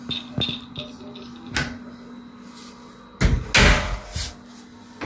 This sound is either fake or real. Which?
real